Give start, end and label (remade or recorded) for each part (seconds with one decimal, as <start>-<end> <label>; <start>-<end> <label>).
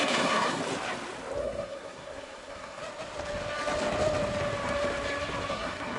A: 0.0-0.6 remade; 0.6-1.4 recorded; 1.4-2.8 remade; 2.8-5.5 recorded; 5.5-6.0 remade